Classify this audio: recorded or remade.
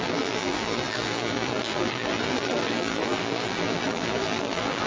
remade